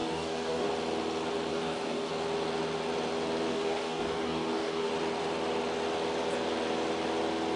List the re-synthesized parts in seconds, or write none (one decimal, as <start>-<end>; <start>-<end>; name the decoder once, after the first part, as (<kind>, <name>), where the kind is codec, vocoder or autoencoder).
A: 0.0-0.7 (codec, DAC); 1.5-2.1; 3.5-4.9